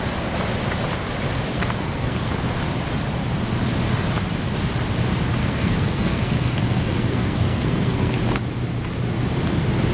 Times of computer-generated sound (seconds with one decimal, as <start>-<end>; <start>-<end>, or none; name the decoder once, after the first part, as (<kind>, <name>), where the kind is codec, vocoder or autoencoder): 1.5-2.4 (codec, SNAC); 5.4-8.2